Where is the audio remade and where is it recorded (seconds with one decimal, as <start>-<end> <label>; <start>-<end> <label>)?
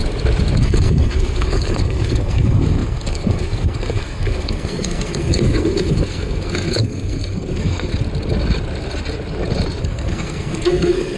0.0-0.6 recorded; 0.6-7.9 remade; 7.9-9.8 recorded; 9.8-11.2 remade